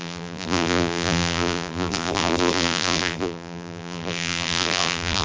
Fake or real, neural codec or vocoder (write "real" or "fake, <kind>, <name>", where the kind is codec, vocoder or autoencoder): fake, vocoder, BigVGAN v2